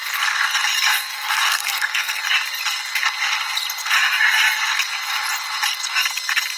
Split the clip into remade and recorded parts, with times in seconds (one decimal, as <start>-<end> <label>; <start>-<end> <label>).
0.0-0.9 recorded; 0.9-2.2 remade; 2.2-6.6 recorded